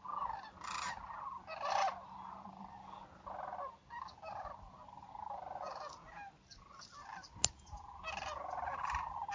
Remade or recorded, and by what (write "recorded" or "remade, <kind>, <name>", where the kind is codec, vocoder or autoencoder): recorded